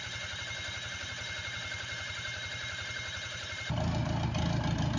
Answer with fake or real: real